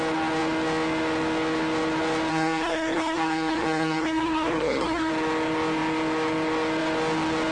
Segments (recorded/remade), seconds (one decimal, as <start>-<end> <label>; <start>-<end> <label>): 0.0-2.3 recorded; 2.3-5.1 remade; 5.1-7.5 recorded